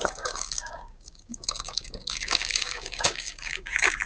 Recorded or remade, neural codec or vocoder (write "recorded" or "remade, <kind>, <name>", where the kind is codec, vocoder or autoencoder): remade, codec, DAC